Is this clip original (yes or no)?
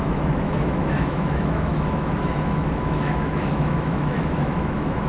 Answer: no